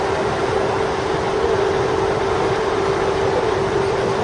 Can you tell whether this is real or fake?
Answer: real